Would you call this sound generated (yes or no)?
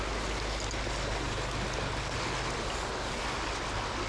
no